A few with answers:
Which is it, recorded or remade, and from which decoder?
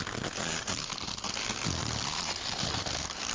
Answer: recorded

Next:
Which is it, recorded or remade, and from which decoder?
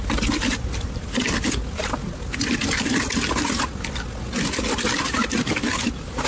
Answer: recorded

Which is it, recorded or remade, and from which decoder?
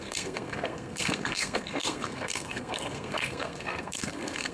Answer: remade, codec, SNAC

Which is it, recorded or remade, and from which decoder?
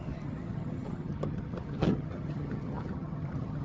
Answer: remade, vocoder, HiFi-GAN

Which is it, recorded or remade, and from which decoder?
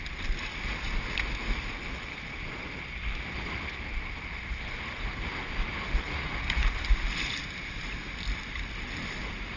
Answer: recorded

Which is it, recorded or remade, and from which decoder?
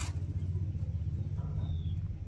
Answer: recorded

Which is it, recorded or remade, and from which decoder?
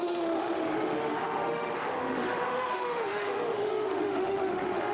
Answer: remade, autoencoder, DAC-VAE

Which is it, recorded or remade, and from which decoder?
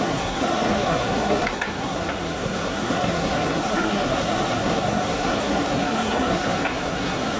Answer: remade, codec, SNAC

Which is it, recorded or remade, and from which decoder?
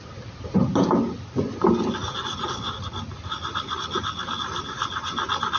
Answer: recorded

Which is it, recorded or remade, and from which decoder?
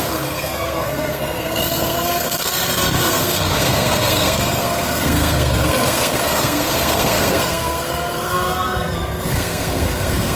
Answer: remade, codec, SNAC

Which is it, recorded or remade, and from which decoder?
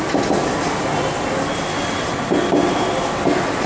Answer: recorded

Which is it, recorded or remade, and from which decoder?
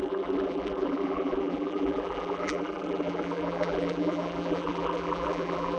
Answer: remade, vocoder, BigVGAN v2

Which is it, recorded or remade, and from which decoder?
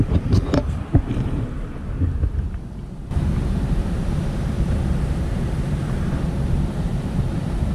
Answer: remade, vocoder, BigVGAN v2